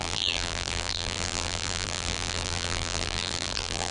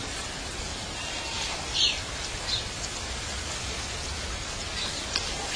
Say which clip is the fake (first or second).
first